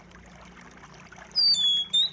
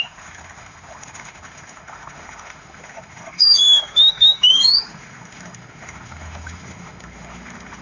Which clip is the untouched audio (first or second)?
first